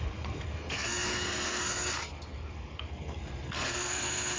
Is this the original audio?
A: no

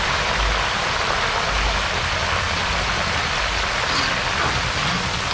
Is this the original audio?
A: yes